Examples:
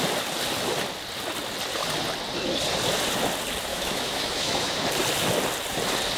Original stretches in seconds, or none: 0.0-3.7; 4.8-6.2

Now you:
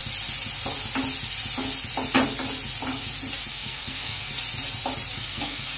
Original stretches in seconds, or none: 0.0-3.5; 4.3-5.2

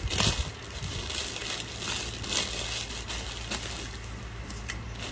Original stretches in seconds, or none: 0.0-5.1

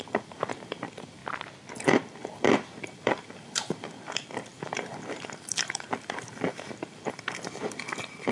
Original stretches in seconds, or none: 1.2-1.8

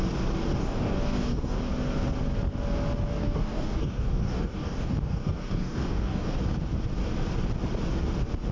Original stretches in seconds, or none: 0.0-0.6; 1.7-3.2; 6.4-8.5